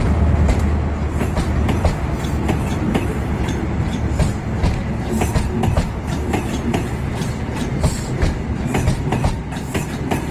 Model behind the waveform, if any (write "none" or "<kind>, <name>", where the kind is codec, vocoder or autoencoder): none